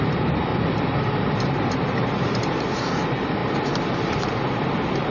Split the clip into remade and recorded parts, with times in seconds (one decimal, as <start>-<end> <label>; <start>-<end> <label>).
0.0-0.5 remade; 0.5-1.5 recorded; 1.5-5.1 remade